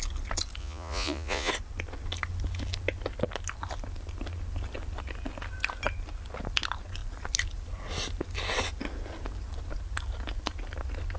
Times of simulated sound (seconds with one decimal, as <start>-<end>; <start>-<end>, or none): 0.6-1.5